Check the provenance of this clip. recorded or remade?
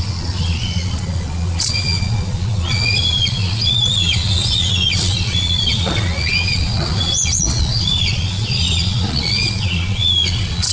remade